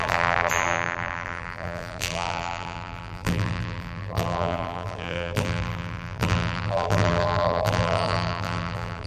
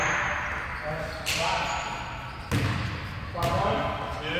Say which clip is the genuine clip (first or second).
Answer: second